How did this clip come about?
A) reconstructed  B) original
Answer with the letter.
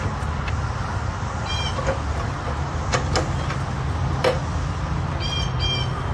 B